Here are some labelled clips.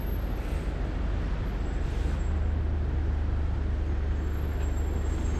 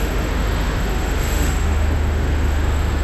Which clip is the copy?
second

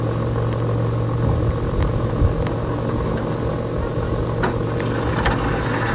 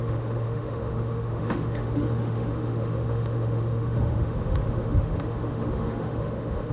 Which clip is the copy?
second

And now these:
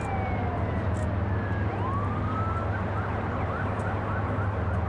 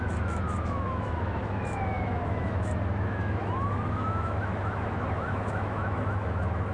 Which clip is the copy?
second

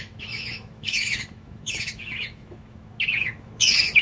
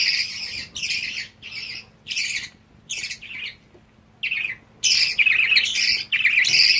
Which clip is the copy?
first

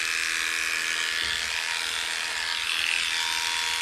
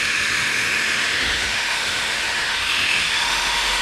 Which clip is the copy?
second